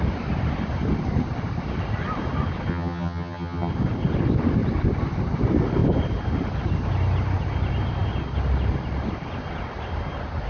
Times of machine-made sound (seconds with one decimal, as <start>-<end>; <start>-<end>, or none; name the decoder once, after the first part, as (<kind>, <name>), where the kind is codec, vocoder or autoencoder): 2.7-3.7 (vocoder, HiFi-GAN)